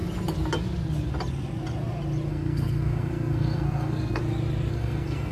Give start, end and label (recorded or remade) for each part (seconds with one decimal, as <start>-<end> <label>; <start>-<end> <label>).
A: 0.0-2.3 recorded; 2.3-4.2 remade; 4.2-4.7 recorded; 4.7-5.3 remade